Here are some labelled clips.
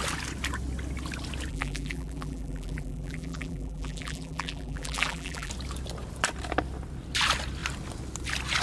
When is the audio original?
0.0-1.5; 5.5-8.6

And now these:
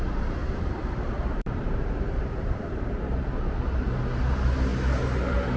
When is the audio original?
0.0-0.4; 2.8-5.6

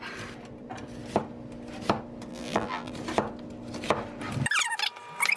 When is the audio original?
0.0-2.3; 2.9-5.4

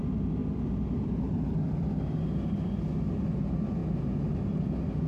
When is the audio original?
0.0-0.4; 2.7-5.1

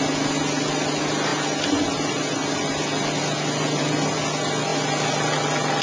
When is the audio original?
0.0-5.8

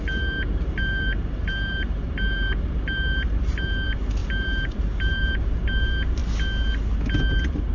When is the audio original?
6.2-7.7